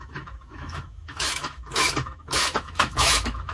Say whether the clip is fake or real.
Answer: fake